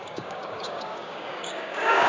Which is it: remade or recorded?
remade